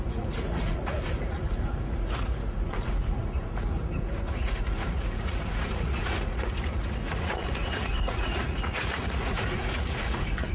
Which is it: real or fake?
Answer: fake